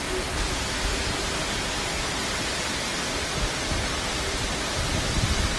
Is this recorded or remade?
recorded